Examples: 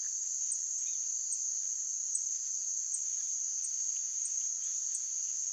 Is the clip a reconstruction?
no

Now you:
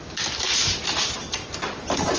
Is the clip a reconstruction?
no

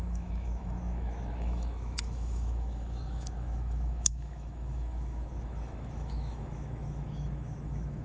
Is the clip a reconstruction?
yes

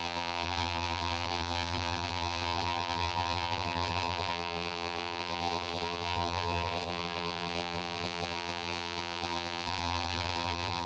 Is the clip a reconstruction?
yes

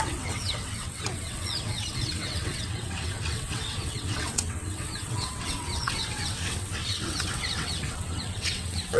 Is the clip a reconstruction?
yes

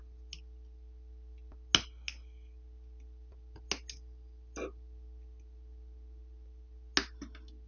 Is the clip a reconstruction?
no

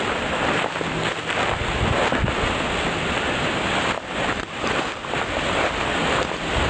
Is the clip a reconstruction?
no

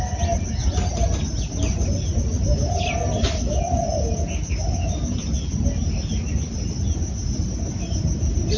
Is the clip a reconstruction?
no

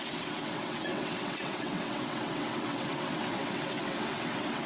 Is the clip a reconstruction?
yes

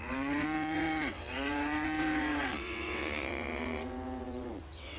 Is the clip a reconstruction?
yes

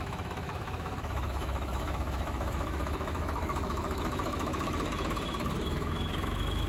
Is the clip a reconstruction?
yes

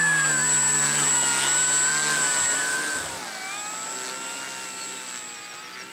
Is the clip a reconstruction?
no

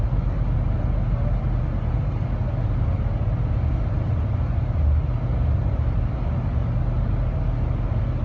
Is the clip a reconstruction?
no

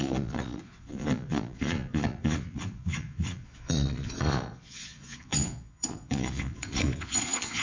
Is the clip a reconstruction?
yes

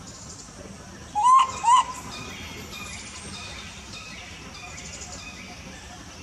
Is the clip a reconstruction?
no